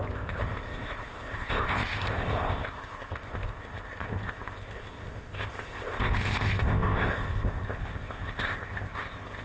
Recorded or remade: remade